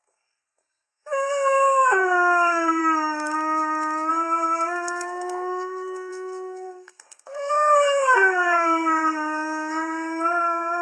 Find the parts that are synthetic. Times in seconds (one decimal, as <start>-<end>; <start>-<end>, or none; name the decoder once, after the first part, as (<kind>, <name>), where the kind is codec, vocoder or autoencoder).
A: 0.0-2.8 (codec, SNAC); 4.1-10.8

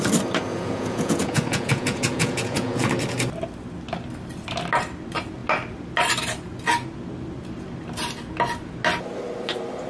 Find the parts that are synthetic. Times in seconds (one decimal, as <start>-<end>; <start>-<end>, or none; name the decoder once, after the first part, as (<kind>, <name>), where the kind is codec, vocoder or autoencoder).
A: 0.5-2.9 (vocoder, Vocos)

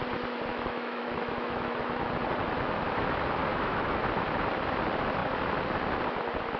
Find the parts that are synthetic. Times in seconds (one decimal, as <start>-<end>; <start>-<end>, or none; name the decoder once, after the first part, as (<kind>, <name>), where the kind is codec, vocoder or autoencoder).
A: 0.5-2.1 (autoencoder, DAC-VAE); 3.5-4.0

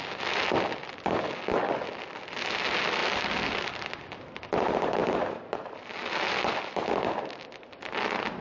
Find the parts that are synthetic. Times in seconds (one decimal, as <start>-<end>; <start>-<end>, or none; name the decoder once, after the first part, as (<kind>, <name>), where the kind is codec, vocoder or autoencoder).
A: none

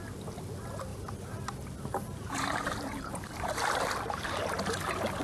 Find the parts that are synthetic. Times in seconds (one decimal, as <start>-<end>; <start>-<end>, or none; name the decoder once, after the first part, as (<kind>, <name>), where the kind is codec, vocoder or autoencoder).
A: 0.9-1.4 (vocoder, BigVGAN v2); 2.0-4.5

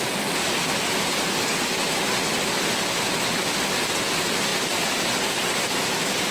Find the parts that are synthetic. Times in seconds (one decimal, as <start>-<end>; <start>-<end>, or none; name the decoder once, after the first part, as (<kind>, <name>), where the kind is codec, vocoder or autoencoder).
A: none

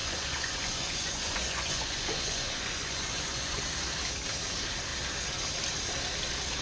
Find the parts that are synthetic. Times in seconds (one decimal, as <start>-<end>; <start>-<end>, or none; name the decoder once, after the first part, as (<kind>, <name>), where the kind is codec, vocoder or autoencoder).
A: 0.0-3.6 (vocoder, Vocos)

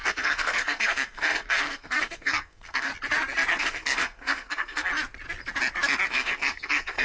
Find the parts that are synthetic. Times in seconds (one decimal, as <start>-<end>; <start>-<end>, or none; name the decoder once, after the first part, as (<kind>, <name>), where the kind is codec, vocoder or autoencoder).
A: 0.0-2.9 (codec, SNAC); 3.6-4.9; 6.1-7.0